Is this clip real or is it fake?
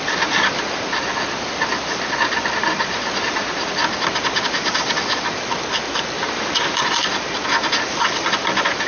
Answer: real